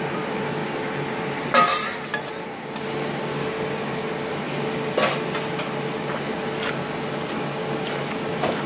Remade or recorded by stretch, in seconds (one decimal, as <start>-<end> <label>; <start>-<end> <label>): 0.0-3.3 recorded; 3.3-3.9 remade; 3.9-8.7 recorded